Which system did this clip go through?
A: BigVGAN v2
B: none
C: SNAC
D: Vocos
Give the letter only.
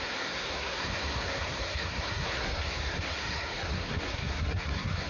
C